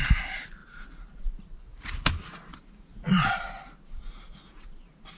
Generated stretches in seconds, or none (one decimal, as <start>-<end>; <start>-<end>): none